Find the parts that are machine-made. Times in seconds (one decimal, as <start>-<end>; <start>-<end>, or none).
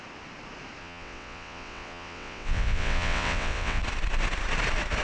0.8-3.8